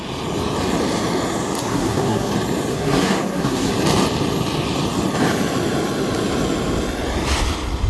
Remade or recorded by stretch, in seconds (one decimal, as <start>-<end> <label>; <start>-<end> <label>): 0.0-1.6 recorded; 1.6-2.3 remade; 2.3-2.7 recorded; 2.7-3.7 remade; 3.7-7.9 recorded